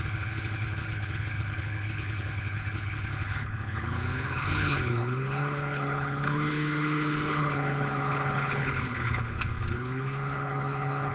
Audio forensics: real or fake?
fake